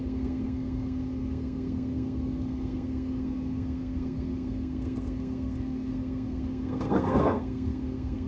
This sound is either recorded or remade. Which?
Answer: remade